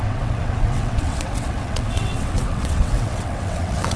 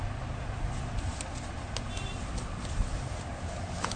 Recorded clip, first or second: second